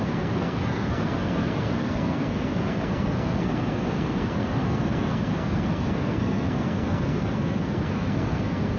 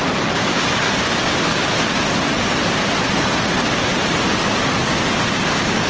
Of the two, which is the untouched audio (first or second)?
second